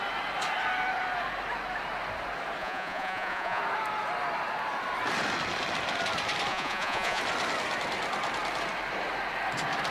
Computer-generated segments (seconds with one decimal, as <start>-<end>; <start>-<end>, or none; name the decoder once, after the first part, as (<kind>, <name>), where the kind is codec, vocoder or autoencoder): 2.6-3.6 (vocoder, Vocos); 6.5-7.2